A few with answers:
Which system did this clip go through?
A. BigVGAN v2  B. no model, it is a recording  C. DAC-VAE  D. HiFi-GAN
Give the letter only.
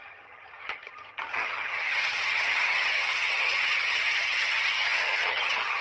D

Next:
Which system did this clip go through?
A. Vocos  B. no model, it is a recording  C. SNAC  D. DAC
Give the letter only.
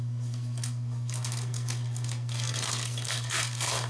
C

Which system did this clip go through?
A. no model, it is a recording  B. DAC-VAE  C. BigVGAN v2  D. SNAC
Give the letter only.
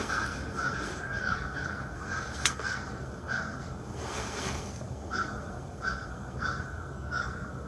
D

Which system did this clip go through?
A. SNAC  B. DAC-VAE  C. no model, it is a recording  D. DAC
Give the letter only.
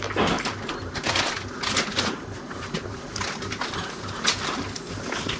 C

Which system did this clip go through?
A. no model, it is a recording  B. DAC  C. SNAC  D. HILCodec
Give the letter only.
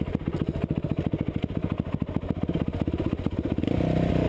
A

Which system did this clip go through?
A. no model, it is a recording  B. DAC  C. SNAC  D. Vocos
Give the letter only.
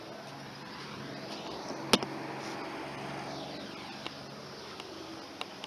A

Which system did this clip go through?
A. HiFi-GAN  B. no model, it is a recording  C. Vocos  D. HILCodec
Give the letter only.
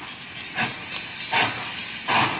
B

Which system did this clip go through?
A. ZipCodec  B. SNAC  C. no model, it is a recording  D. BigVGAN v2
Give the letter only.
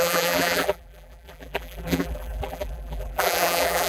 D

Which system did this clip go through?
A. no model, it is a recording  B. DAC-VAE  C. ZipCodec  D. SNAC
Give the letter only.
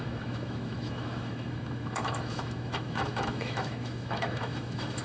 B